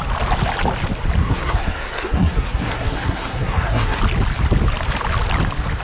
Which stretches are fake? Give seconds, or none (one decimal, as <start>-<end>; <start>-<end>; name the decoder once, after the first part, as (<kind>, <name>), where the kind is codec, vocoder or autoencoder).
1.2-4.0 (codec, SNAC)